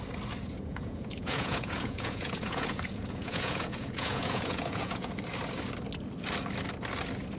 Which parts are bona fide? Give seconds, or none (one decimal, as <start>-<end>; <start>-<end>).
0.0-0.7; 5.1-7.4